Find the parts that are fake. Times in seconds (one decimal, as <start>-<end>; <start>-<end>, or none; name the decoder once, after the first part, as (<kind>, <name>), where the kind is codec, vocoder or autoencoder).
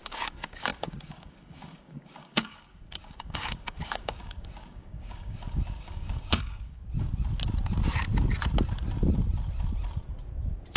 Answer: 0.0-6.8 (codec, DAC)